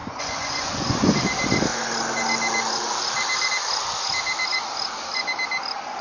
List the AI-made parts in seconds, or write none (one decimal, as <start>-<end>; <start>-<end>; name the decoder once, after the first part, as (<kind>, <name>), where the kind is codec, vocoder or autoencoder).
0.0-1.2 (vocoder, Vocos)